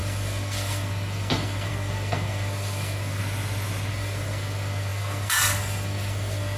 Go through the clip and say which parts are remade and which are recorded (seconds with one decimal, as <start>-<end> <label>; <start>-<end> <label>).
0.0-3.2 remade; 3.2-3.9 recorded; 3.9-6.6 remade